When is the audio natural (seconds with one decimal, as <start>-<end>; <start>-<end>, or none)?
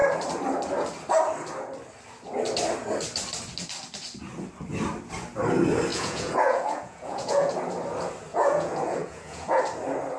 0.0-5.9; 7.5-8.3; 9.6-10.2